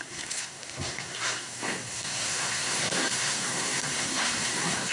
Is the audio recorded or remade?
remade